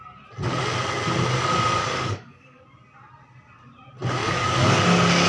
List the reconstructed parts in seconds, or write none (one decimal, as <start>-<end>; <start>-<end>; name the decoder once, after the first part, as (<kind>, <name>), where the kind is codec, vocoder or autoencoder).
1.8-2.6 (codec, DAC); 4.2-4.8